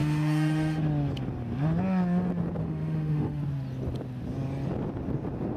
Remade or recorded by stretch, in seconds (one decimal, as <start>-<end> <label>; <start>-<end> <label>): 0.0-0.8 remade; 0.8-2.6 recorded; 2.6-3.4 remade; 3.4-5.6 recorded